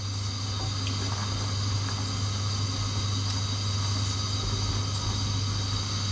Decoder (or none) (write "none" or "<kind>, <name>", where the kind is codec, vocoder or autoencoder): none